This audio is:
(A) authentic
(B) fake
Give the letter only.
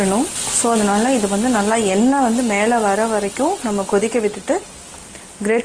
A